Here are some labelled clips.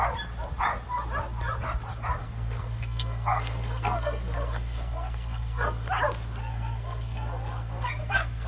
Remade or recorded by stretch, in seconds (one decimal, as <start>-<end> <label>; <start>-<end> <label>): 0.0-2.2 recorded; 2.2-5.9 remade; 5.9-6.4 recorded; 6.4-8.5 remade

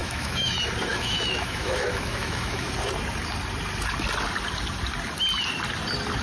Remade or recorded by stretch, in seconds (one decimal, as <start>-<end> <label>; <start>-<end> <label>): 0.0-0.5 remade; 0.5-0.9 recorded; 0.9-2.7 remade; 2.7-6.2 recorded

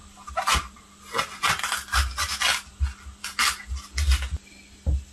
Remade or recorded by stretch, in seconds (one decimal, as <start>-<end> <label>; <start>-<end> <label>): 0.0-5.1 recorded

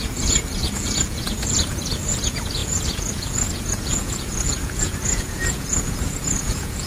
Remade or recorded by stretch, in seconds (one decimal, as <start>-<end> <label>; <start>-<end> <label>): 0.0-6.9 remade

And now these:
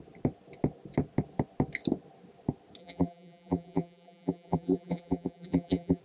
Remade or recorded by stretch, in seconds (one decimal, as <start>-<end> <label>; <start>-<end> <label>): 0.0-2.8 recorded; 2.8-6.0 remade

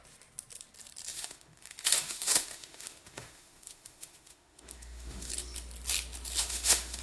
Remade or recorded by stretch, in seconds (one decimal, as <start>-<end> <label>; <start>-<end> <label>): 0.0-1.1 recorded; 1.1-5.3 remade; 5.3-6.4 recorded; 6.4-7.0 remade